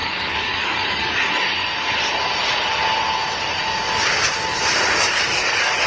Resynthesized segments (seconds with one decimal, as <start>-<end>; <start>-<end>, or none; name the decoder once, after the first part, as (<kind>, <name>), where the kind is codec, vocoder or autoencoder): 0.0-1.5 (codec, DAC); 5.0-5.9